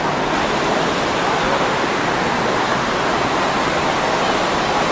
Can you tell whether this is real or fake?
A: real